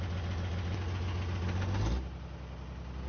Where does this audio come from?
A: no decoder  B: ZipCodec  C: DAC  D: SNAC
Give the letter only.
A